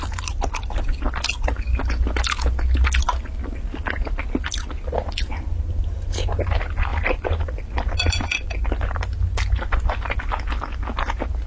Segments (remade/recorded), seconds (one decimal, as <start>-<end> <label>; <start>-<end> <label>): 0.0-11.5 recorded